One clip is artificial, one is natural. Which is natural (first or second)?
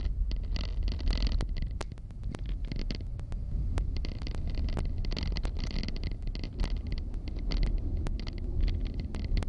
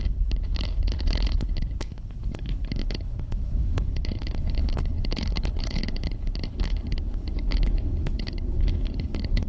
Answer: first